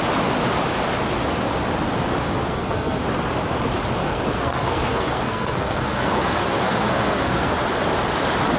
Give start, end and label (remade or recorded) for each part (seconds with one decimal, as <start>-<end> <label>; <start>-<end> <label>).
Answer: 0.0-2.4 recorded; 2.4-3.0 remade; 3.0-4.0 recorded; 4.0-7.5 remade; 7.5-8.6 recorded